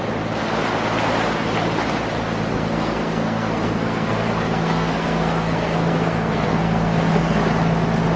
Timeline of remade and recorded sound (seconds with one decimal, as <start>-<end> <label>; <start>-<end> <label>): 0.0-2.5 recorded; 2.5-7.4 remade; 7.4-8.2 recorded

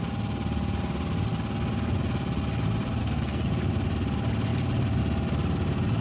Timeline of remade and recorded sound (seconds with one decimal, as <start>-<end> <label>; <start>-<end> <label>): 0.0-3.0 recorded; 3.0-3.5 remade; 3.5-6.0 recorded

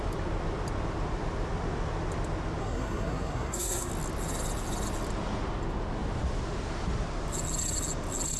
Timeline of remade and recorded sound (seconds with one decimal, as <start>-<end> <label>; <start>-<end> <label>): 0.0-2.6 recorded; 2.6-3.9 remade; 3.9-8.4 recorded

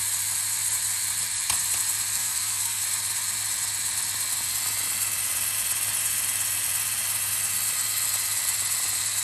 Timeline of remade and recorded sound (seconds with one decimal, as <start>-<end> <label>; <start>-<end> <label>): 0.0-2.1 recorded; 2.1-2.8 remade; 2.8-9.2 recorded

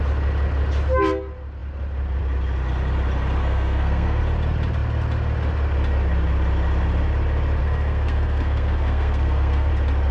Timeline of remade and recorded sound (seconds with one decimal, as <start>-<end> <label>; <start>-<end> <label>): 0.0-3.4 recorded; 3.4-4.2 remade; 4.2-7.6 recorded; 7.6-9.7 remade; 9.7-10.1 recorded

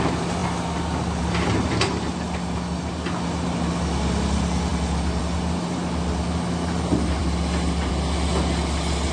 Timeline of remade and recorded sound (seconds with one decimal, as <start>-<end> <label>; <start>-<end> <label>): 0.0-9.1 recorded

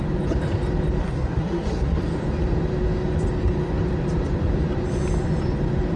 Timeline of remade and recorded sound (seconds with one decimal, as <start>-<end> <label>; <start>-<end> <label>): 0.0-1.0 recorded; 1.0-2.0 remade; 2.0-6.0 recorded